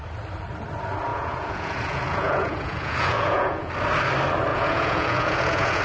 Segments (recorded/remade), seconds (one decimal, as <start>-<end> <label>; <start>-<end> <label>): 0.0-1.1 recorded; 1.1-3.7 remade; 3.7-4.5 recorded; 4.5-5.8 remade